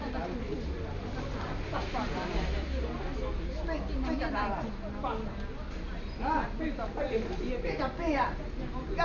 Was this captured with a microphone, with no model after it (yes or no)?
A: yes